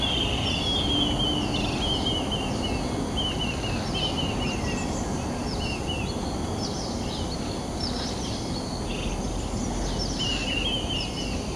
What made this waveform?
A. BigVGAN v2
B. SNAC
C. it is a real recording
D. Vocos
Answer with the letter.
C